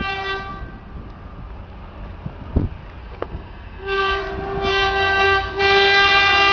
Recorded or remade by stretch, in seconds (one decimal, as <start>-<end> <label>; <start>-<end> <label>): 0.0-3.0 recorded; 3.0-4.2 remade; 4.2-4.7 recorded; 4.7-5.6 remade; 5.6-6.5 recorded

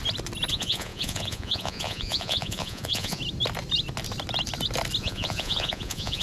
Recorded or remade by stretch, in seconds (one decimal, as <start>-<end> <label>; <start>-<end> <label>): 0.0-0.5 recorded; 0.5-3.2 remade; 3.2-5.0 recorded; 5.0-6.2 remade

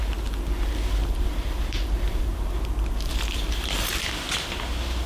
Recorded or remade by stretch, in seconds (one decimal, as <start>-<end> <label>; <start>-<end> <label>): 0.0-1.0 recorded; 1.0-4.0 remade; 4.0-5.1 recorded